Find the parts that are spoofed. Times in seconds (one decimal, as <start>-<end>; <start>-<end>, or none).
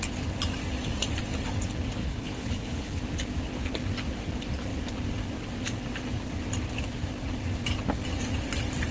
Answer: 2.0-3.0